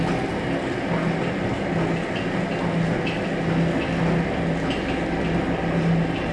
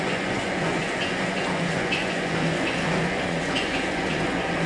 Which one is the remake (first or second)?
second